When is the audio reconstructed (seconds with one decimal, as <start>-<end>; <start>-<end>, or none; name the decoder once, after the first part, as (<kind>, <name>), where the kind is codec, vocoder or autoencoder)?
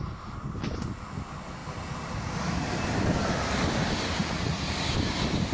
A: 4.1-4.6 (vocoder, Vocos)